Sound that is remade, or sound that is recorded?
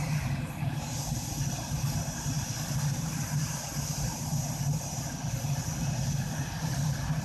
recorded